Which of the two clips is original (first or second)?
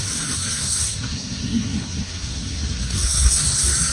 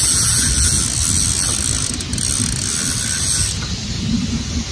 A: second